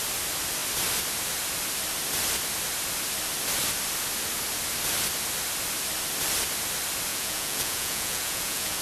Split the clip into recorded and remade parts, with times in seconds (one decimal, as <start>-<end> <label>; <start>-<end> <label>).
0.0-7.1 recorded; 7.1-8.8 remade